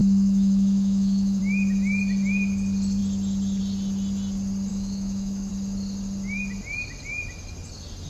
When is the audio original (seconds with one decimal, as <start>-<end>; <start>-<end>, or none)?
1.4-4.7; 5.5-8.1